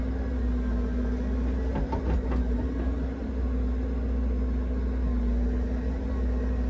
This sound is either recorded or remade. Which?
recorded